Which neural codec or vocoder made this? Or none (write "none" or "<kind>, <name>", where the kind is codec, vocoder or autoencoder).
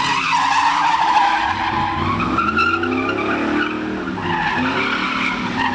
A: none